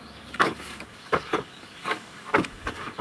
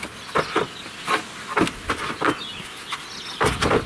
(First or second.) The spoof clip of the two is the first